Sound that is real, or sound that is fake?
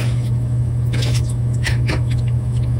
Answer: fake